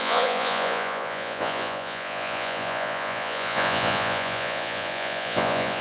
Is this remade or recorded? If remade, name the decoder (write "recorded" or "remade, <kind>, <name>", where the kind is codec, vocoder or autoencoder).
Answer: remade, vocoder, Vocos